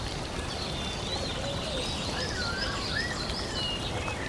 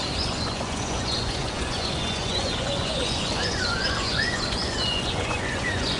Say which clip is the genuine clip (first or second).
first